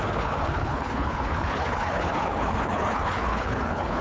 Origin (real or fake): fake